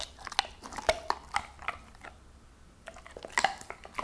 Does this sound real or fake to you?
real